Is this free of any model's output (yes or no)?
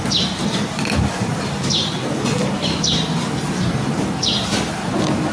yes